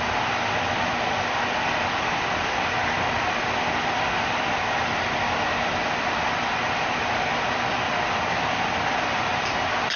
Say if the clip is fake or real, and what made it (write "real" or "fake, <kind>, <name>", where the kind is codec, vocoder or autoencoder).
fake, vocoder, BigVGAN v2